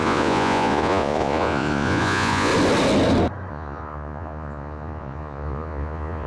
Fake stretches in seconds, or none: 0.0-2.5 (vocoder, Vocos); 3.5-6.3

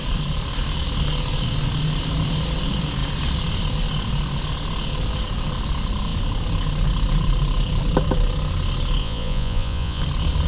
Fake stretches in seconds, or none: 9.0-10.0 (vocoder, Vocos)

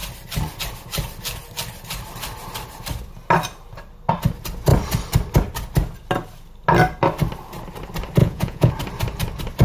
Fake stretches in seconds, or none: 8.2-8.7 (vocoder, Vocos)